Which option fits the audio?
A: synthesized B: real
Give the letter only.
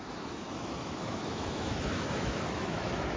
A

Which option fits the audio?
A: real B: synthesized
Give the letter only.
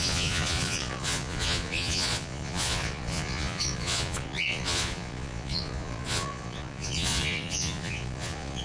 B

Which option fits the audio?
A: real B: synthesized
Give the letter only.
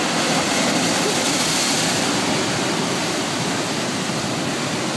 A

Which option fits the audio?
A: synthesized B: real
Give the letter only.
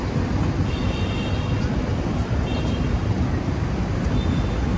B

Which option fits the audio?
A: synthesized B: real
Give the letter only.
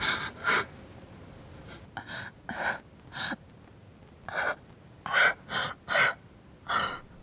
B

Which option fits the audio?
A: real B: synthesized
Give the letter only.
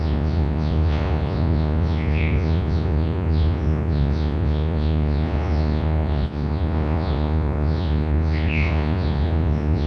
B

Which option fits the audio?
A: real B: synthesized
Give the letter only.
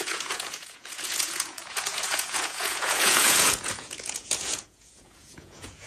B